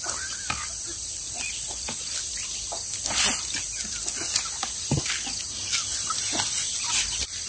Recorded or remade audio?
recorded